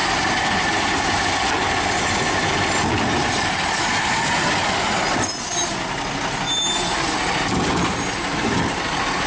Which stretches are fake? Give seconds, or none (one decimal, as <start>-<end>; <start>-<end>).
none